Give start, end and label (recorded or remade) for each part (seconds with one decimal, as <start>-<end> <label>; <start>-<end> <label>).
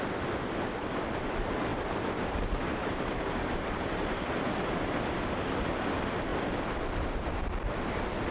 0.0-1.7 recorded; 1.7-4.3 remade; 4.3-8.3 recorded